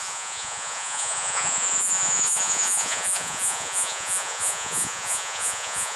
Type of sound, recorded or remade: remade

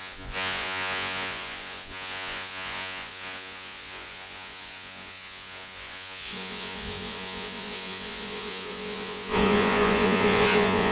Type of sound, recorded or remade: remade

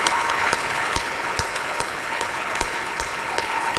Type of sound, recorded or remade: remade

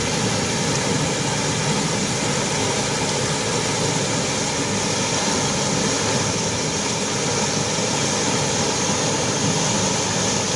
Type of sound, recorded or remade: recorded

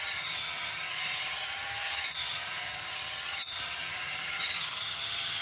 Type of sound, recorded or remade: remade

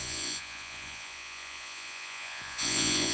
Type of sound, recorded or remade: remade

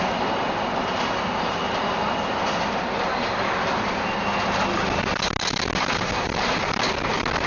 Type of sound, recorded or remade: recorded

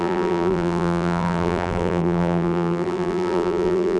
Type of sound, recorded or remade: remade